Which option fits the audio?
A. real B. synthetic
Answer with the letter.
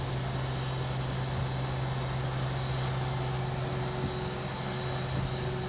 A